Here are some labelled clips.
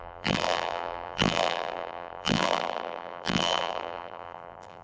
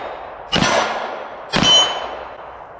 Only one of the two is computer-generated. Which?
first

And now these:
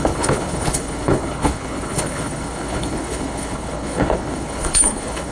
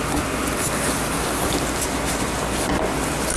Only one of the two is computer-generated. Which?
first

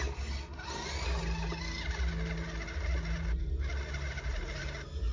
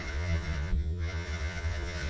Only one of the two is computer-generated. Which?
second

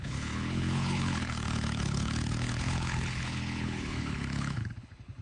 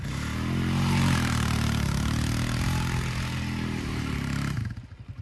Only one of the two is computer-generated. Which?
first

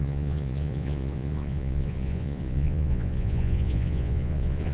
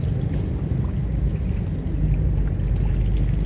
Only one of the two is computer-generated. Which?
first